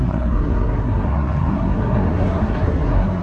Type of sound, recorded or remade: remade